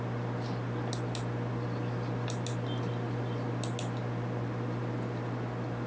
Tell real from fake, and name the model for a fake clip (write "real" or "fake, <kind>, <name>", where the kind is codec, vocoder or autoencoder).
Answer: real